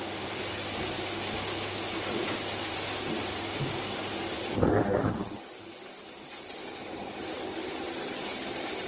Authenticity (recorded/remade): recorded